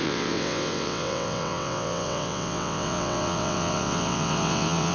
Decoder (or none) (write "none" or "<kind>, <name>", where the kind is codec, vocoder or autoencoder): vocoder, WaveNeXt